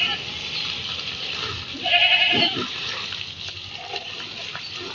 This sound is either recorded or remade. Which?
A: recorded